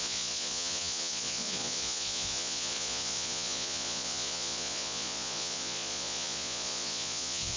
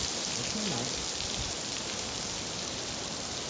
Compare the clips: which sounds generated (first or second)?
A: first